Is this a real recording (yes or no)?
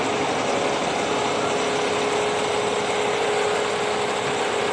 yes